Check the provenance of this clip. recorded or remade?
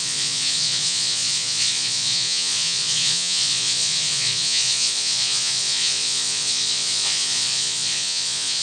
remade